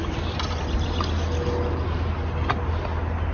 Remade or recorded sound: recorded